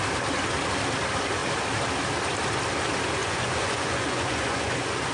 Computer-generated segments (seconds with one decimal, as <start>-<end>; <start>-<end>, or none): 3.2-5.1